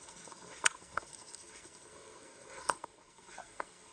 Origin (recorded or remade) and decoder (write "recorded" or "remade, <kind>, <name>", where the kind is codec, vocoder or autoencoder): remade, codec, SNAC